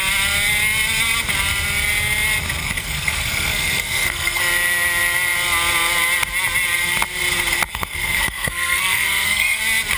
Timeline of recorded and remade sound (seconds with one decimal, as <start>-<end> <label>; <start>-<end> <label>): 0.0-2.6 recorded; 2.6-4.4 remade; 4.4-7.7 recorded; 7.7-9.6 remade; 9.6-10.0 recorded